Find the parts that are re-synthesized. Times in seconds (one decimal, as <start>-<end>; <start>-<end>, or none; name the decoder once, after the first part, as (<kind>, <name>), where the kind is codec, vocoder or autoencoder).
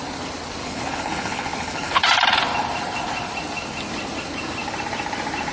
0.6-2.0 (codec, HILCodec)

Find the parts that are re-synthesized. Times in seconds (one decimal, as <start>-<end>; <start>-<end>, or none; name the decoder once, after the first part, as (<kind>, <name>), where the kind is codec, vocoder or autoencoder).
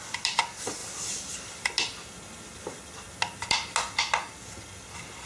none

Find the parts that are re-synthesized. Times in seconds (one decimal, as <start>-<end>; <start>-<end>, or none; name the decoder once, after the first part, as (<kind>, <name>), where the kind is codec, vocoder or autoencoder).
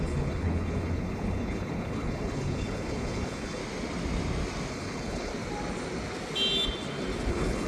0.0-3.6 (codec, HILCodec); 4.7-5.3; 7.3-7.7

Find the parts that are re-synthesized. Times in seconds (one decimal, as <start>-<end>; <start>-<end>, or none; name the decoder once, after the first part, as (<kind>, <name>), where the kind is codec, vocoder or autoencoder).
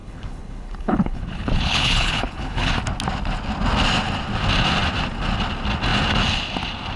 0.0-2.7 (codec, HILCodec)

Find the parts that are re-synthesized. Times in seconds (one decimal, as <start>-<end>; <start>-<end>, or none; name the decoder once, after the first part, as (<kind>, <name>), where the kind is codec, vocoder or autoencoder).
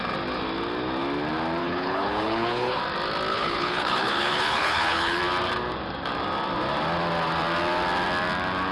1.6-2.8 (codec, HILCodec); 3.3-5.2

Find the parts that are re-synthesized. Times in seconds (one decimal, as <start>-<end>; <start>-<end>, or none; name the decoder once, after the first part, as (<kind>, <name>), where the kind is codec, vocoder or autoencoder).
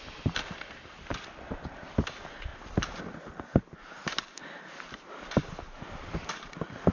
none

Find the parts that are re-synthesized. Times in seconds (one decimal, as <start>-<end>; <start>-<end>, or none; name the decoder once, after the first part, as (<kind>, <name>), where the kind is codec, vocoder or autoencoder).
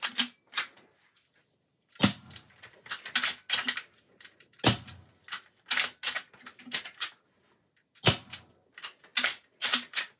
none